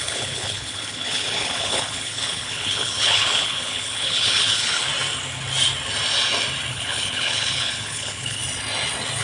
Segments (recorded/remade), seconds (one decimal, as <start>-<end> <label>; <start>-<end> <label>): 0.0-4.9 remade; 4.9-6.7 recorded; 6.7-8.4 remade; 8.4-9.2 recorded